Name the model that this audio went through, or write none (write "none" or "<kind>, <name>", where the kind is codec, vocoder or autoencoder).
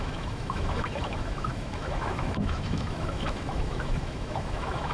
autoencoder, DAC-VAE